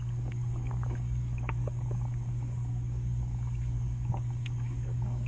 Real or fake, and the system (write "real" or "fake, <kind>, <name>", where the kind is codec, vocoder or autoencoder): fake, codec, DAC